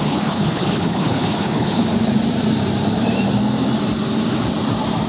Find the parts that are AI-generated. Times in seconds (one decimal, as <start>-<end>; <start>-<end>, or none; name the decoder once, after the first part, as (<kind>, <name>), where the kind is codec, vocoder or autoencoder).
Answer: 0.0-1.8 (codec, HILCodec)